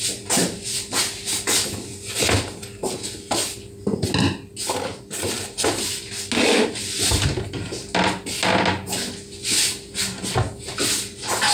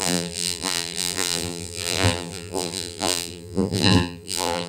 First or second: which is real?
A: first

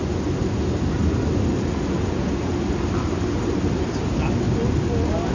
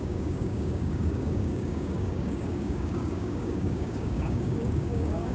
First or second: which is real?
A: first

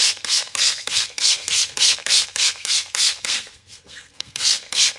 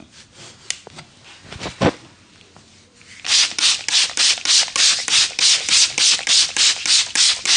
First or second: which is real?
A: second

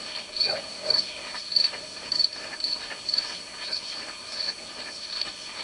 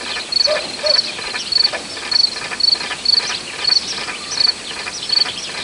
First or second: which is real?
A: second